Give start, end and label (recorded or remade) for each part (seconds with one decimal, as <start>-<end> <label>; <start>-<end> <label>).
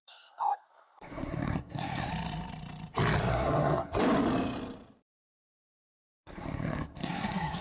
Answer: 0.0-2.1 remade; 2.1-3.3 recorded; 3.3-4.0 remade; 4.0-6.2 recorded; 6.2-7.6 remade